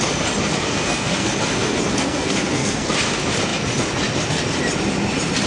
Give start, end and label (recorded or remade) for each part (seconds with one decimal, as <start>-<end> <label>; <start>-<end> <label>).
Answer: 0.0-0.5 recorded; 0.5-1.3 remade; 1.3-1.9 recorded; 1.9-2.9 remade; 2.9-5.5 recorded

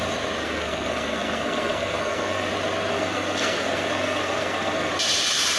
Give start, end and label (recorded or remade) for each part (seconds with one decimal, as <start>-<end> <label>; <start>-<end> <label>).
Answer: 0.0-0.4 recorded; 0.4-2.5 remade; 2.5-2.9 recorded; 2.9-4.9 remade; 4.9-5.6 recorded

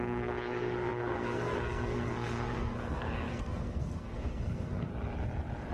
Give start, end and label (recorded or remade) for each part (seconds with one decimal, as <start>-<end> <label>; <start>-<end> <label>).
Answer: 0.0-4.9 remade; 4.9-5.7 recorded

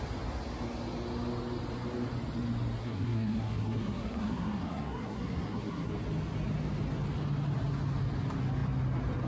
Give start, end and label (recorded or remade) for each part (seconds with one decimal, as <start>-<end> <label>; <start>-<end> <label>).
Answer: 0.0-2.8 recorded; 2.8-5.9 remade; 5.9-9.3 recorded